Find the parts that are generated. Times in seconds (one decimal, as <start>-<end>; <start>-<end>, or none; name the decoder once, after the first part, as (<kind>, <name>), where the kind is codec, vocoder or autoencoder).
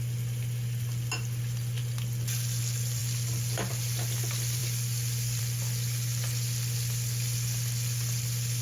none